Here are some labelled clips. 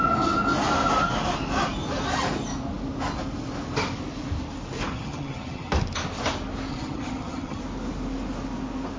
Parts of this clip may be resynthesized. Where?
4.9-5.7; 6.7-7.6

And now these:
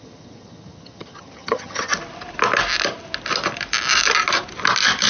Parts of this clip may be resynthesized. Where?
0.0-1.9